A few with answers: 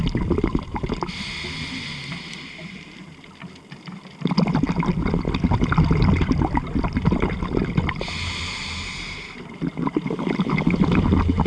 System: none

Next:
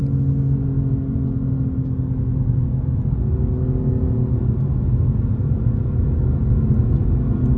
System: none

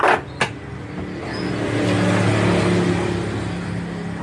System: none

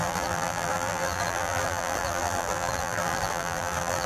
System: vocoder, BigVGAN v2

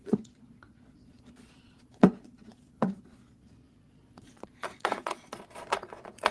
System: vocoder, Vocos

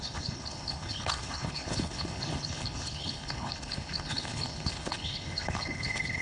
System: codec, HILCodec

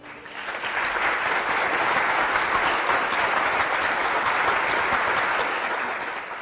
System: none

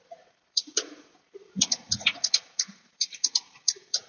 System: vocoder, Vocos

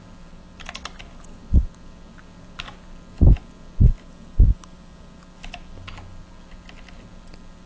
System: none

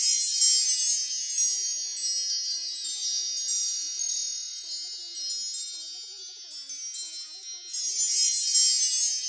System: none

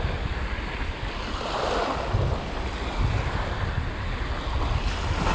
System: none